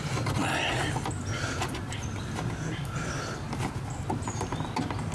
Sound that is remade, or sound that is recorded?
recorded